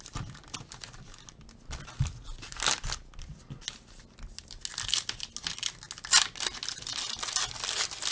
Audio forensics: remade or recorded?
recorded